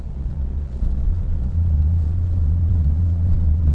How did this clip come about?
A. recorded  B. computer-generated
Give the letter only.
B